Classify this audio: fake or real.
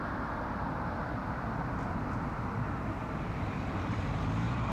fake